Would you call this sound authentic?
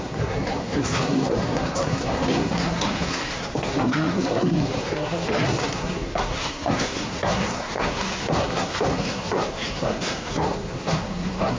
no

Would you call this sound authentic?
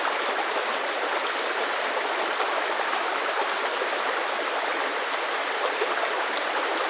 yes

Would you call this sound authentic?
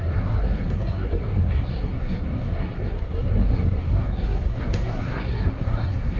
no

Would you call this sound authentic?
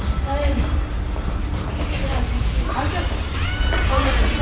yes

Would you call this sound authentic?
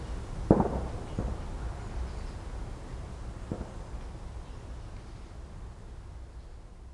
yes